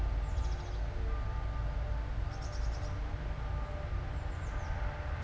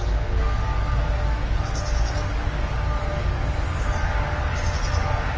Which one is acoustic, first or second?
first